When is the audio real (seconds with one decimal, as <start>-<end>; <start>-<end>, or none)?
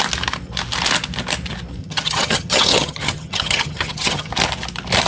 0.0-1.8; 4.3-5.1